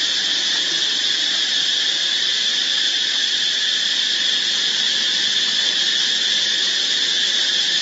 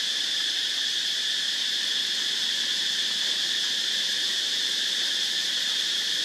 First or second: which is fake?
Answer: second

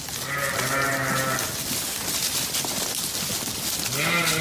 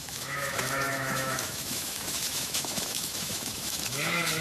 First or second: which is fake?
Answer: second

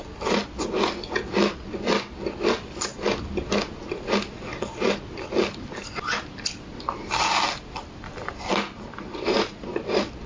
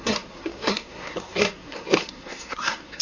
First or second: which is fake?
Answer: second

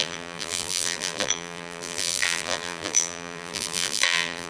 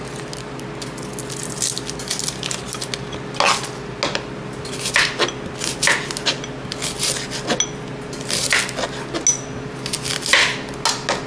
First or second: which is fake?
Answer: first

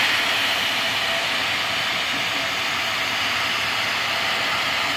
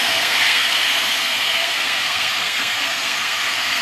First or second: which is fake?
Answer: second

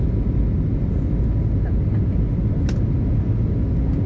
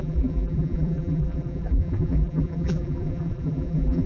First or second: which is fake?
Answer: second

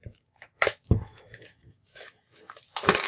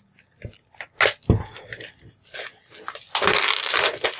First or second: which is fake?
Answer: first